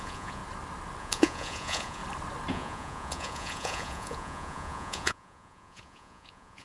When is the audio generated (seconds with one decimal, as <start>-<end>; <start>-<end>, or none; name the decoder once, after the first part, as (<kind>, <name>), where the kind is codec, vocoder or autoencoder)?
0.0-0.4 (vocoder, Vocos); 1.0-2.0; 2.5-6.6